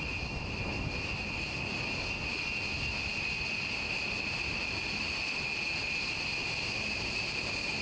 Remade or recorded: recorded